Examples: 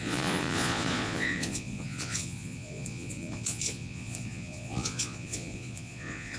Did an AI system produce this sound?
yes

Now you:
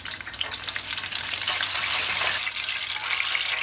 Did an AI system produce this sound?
no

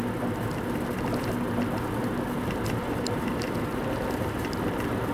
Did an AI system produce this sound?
no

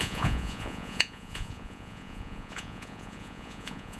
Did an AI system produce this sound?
yes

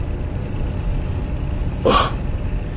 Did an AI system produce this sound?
no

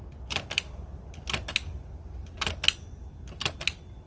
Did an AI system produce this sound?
no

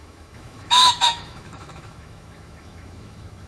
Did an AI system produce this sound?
yes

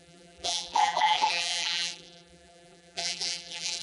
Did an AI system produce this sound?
yes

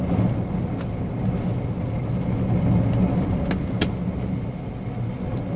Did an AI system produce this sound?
no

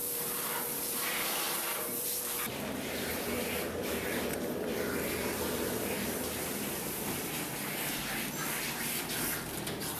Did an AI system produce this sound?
yes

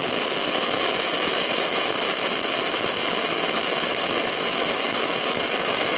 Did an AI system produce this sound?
yes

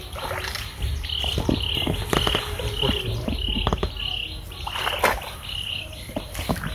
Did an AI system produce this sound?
no